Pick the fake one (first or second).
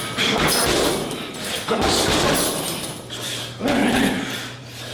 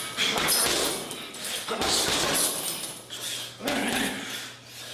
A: first